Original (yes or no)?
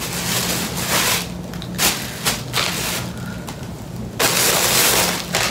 yes